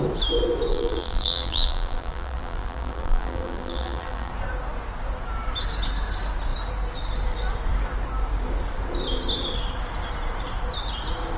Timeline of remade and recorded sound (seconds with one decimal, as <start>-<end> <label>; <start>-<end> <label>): 0.0-0.7 recorded; 0.7-4.3 remade; 4.3-11.4 recorded